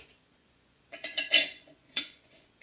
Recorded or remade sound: remade